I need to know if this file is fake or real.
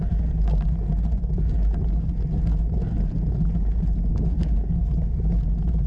real